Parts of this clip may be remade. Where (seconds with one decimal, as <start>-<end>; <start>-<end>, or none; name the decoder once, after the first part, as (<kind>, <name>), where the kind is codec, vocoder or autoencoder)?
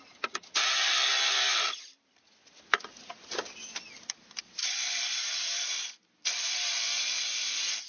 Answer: 4.6-5.9 (vocoder, BigVGAN v2)